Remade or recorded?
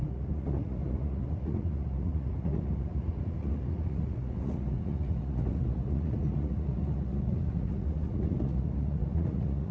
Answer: remade